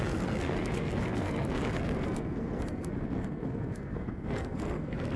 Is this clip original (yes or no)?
no